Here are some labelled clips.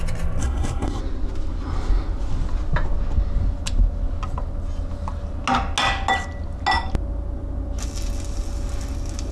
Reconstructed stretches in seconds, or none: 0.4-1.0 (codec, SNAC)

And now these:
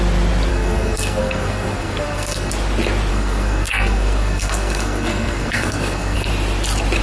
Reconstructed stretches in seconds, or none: 0.5-2.5 (codec, SNAC); 3.1-6.3